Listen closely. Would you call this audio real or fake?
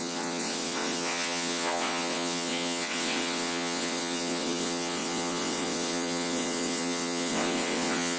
fake